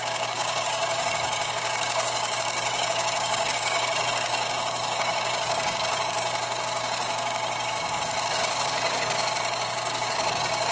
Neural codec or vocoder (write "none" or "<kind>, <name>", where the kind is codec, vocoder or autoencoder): codec, DAC